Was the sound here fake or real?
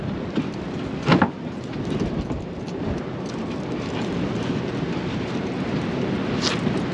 real